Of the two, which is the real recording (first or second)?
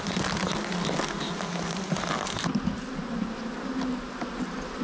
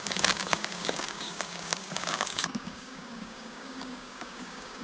first